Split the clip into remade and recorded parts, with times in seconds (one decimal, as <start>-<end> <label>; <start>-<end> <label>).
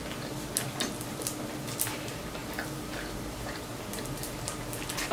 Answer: 0.0-2.4 recorded; 2.4-3.8 remade; 3.8-5.1 recorded